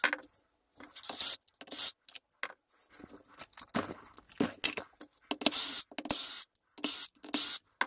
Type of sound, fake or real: real